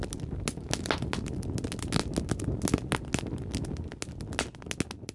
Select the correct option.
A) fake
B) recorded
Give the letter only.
B